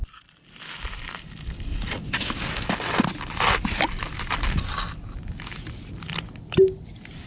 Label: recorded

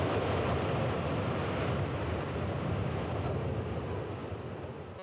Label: recorded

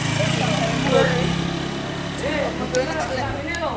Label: recorded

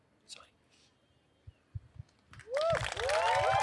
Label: recorded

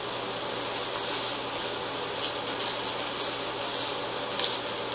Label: recorded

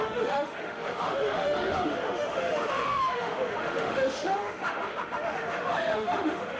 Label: remade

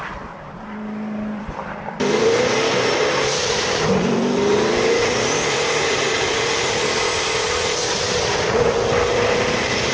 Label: remade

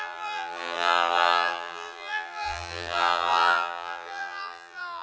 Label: remade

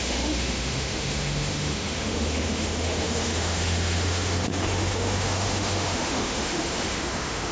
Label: remade